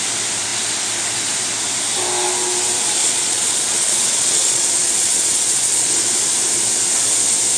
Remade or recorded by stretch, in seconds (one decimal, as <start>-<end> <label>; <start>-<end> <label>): 0.0-3.0 recorded; 3.0-5.9 remade; 5.9-7.6 recorded